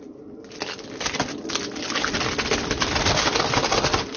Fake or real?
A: real